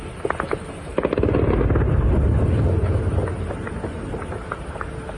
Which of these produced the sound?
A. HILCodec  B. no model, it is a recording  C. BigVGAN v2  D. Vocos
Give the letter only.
B